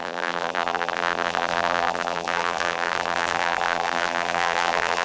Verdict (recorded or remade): remade